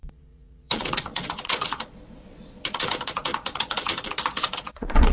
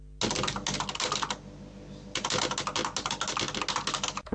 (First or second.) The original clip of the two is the second